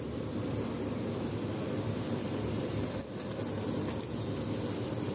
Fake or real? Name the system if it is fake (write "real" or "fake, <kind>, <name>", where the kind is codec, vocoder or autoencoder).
real